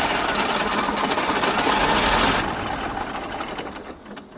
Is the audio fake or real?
real